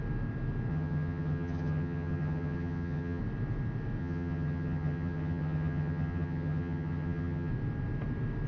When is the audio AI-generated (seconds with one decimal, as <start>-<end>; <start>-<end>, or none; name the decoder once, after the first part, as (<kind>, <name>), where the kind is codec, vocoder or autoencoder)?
0.7-3.2 (vocoder, HiFi-GAN); 4.0-7.5

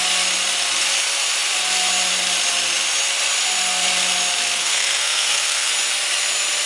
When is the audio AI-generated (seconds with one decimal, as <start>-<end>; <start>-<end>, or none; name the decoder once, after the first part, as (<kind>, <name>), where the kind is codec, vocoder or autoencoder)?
4.6-5.7 (codec, SNAC)

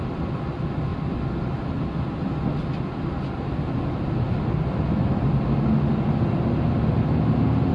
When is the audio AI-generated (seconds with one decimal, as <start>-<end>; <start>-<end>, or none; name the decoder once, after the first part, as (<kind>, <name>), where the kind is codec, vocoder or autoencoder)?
none

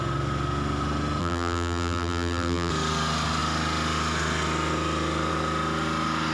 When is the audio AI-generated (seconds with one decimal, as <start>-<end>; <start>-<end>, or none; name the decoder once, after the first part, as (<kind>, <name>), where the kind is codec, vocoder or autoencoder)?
1.2-2.7 (vocoder, BigVGAN v2)

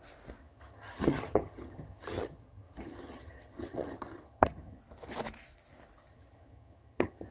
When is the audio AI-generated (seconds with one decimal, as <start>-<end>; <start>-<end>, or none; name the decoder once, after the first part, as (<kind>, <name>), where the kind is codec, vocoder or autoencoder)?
0.4-4.8 (vocoder, HiFi-GAN); 6.1-7.3